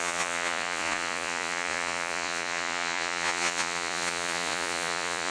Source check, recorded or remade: remade